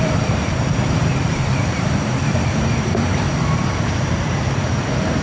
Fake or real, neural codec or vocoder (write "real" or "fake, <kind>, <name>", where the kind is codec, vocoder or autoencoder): fake, vocoder, BigVGAN v2